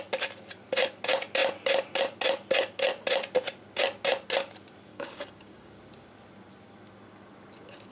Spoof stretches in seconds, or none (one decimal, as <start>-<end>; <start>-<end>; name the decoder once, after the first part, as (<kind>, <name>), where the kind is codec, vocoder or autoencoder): 4.9-5.8 (codec, DAC)